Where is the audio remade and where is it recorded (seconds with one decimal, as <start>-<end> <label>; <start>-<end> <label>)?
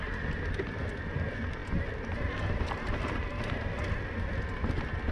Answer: 0.0-5.1 recorded